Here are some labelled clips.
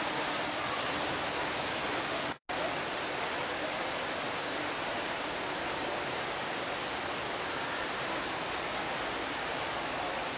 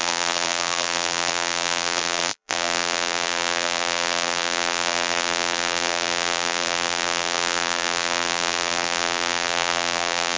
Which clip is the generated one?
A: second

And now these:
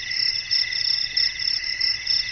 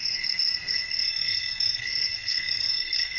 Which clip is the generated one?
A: second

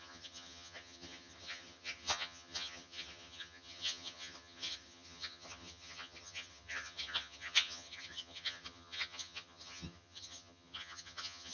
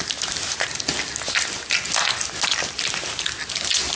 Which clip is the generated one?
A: first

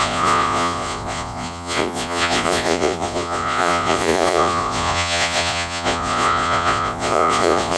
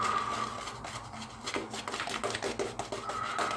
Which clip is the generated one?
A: first